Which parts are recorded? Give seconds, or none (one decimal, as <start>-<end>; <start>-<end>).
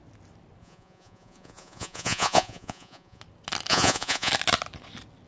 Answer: 0.0-0.6; 3.2-3.7; 4.3-5.3